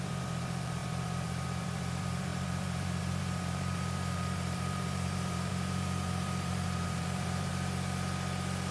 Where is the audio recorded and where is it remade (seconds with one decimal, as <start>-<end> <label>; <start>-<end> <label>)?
0.0-7.5 remade; 7.5-8.7 recorded